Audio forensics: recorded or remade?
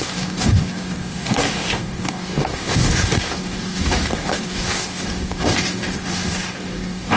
remade